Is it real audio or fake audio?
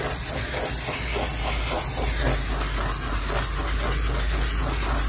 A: real